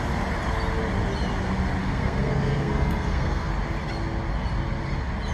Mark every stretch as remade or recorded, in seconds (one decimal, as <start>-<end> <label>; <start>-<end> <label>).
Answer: 0.0-1.8 recorded; 1.8-3.5 remade; 3.5-5.3 recorded